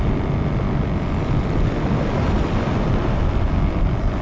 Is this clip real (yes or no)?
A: yes